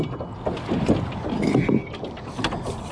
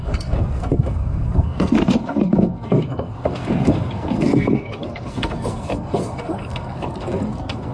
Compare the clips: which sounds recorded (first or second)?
first